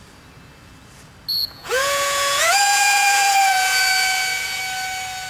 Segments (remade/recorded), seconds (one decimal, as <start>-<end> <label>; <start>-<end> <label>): 0.0-1.4 recorded; 1.4-4.6 remade; 4.6-5.3 recorded